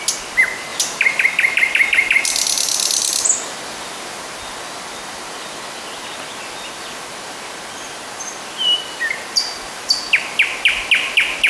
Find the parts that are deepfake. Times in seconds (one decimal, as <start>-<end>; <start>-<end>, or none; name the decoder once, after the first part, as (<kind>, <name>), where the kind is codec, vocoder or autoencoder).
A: none